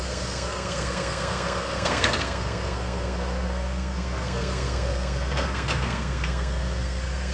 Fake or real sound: fake